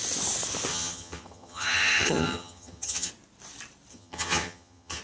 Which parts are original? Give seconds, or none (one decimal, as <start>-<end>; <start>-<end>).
0.0-0.7; 3.1-3.9